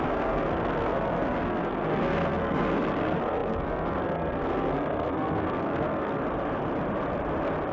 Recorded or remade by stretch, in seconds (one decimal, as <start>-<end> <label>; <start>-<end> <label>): 0.0-6.2 remade; 6.2-7.7 recorded